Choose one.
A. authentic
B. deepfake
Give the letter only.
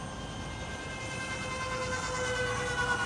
A